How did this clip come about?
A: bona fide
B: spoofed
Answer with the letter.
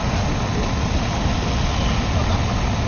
A